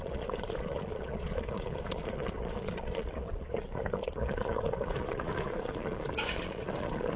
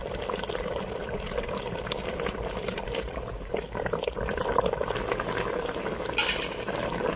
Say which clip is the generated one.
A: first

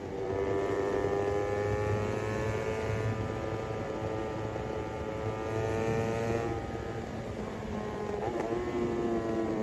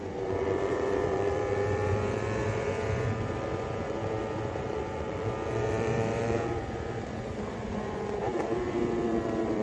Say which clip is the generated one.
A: second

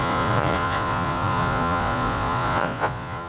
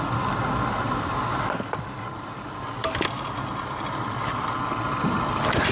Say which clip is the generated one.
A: first